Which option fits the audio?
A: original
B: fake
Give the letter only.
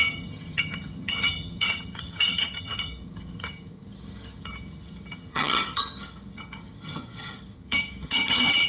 B